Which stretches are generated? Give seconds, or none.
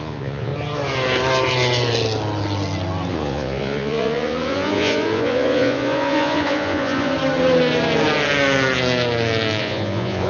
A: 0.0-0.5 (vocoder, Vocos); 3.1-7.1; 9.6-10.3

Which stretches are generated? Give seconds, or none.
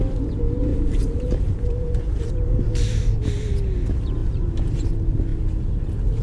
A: 0.7-2.3 (vocoder, BigVGAN v2)